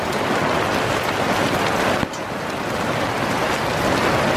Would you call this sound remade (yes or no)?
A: no